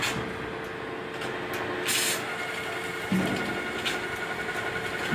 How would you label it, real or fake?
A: real